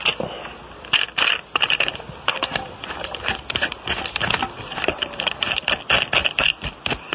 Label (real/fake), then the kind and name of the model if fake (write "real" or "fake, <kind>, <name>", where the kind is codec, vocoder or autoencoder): real